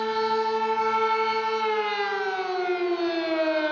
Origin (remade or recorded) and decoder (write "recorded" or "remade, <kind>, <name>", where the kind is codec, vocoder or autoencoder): recorded